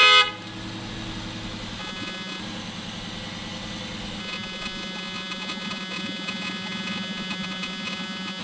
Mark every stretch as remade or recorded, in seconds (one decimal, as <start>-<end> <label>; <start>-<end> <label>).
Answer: 0.0-1.8 recorded; 1.8-2.4 remade; 2.4-4.2 recorded; 4.2-8.4 remade